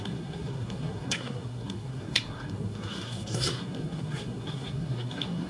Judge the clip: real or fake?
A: fake